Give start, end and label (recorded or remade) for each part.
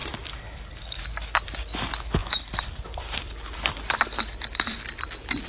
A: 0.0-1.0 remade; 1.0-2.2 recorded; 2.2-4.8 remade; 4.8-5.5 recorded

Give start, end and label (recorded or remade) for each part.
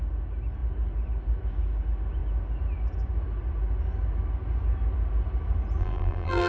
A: 0.0-5.8 recorded; 5.8-6.5 remade